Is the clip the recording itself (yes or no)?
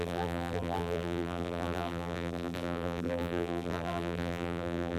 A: no